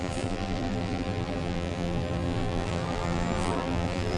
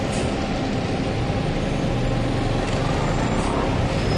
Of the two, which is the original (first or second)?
second